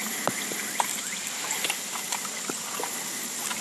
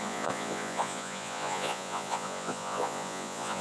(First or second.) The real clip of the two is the first